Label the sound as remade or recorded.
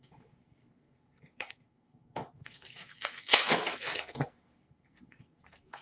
remade